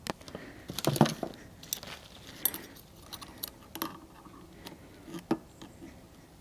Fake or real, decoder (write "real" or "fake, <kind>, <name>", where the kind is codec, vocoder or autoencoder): real